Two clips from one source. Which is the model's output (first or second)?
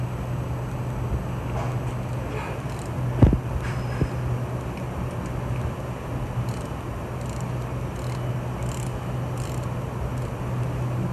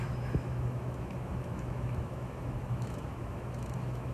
second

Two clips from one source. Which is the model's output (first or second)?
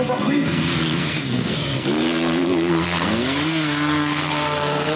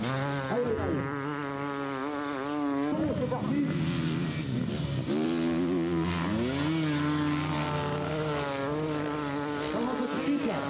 first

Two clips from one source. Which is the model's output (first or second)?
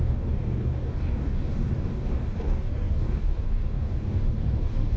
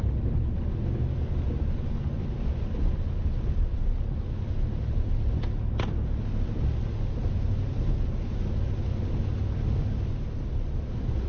first